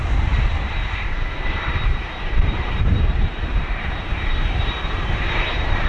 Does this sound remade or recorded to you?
remade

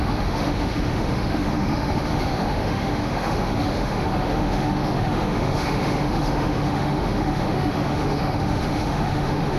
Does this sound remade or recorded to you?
remade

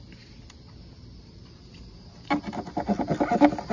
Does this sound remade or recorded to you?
recorded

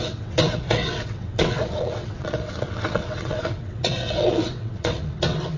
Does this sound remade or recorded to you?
remade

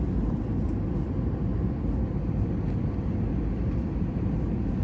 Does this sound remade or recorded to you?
recorded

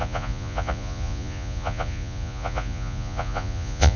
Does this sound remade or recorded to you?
remade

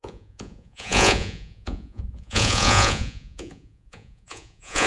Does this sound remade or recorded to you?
remade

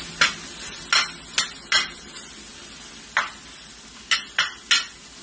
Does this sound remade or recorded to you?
recorded